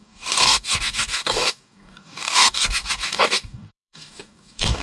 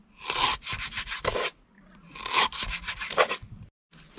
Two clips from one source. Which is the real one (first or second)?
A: second